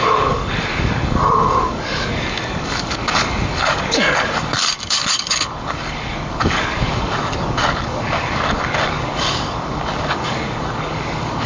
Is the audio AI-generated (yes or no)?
yes